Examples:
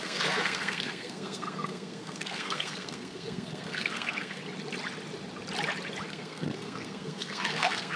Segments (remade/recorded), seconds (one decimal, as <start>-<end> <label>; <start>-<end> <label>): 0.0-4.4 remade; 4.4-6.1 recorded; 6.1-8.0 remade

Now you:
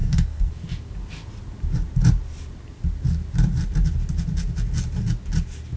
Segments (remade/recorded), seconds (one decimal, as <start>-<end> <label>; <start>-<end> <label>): 0.0-0.5 remade; 0.5-5.8 recorded

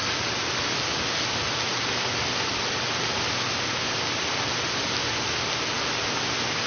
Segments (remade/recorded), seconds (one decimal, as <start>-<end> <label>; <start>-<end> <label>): 0.0-6.7 recorded

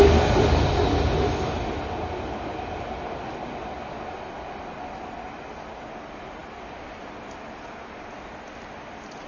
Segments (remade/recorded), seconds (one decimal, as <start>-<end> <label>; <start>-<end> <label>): 0.0-9.3 recorded